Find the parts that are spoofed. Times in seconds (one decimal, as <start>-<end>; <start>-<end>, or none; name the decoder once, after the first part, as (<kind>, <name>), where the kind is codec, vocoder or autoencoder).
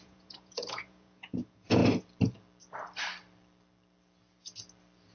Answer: 0.0-1.8 (vocoder, Vocos)